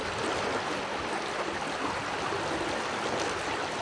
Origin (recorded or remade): recorded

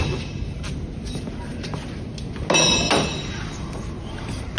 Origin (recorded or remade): recorded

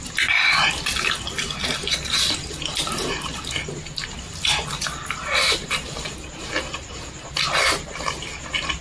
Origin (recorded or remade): recorded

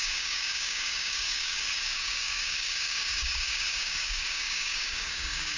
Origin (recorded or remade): remade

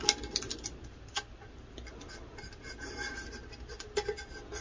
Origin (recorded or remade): recorded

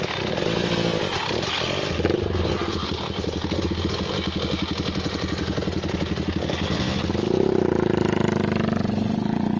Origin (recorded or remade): recorded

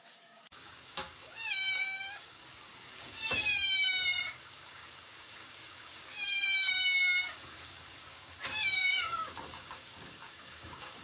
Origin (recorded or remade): remade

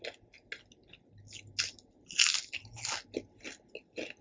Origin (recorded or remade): recorded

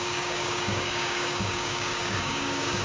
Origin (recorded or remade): remade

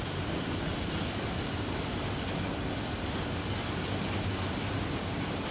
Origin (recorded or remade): recorded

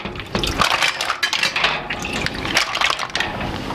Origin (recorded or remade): recorded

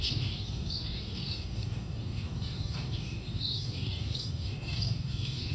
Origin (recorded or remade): remade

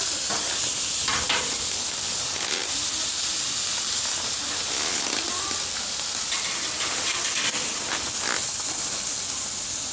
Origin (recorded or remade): recorded